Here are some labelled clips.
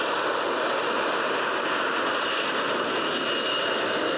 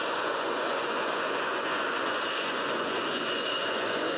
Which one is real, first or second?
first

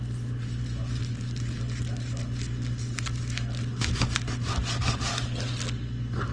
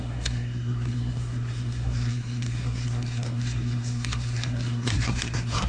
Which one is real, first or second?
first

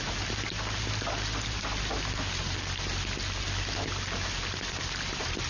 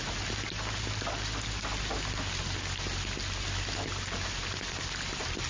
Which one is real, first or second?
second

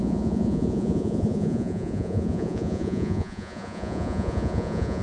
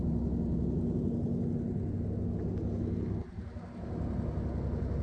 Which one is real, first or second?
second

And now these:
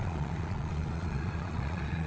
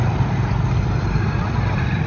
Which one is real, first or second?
second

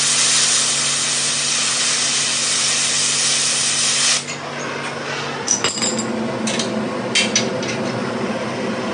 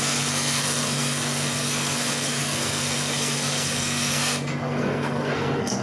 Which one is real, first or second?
first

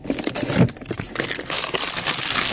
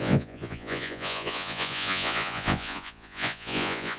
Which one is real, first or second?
first